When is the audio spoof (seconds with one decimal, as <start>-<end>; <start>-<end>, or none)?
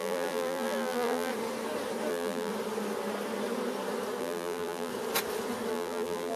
0.0-1.3; 2.1-2.5; 4.2-4.9; 5.7-6.4